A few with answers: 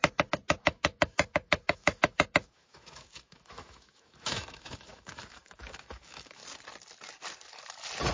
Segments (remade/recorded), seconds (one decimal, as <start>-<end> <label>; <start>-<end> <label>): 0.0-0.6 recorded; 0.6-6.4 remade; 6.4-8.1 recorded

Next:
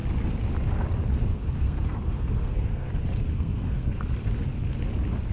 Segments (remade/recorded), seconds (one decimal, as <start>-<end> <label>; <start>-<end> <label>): 0.0-1.3 recorded; 1.3-2.9 remade; 2.9-3.3 recorded; 3.3-4.0 remade; 4.0-5.3 recorded

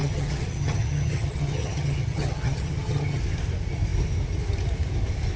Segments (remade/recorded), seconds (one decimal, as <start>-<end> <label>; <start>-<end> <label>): 0.0-3.2 remade; 3.2-5.4 recorded

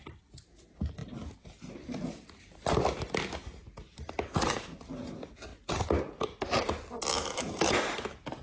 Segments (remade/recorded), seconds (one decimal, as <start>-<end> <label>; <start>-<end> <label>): 0.0-7.1 recorded; 7.1-7.7 remade; 7.7-8.4 recorded